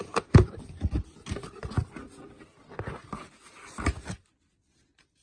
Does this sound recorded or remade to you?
recorded